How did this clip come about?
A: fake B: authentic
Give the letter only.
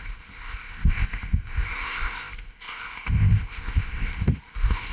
A